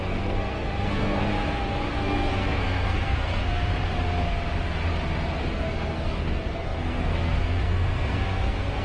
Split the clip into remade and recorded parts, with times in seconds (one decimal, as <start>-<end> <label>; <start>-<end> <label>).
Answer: 0.0-1.3 remade; 1.3-1.9 recorded; 1.9-3.7 remade; 3.7-5.4 recorded; 5.4-8.8 remade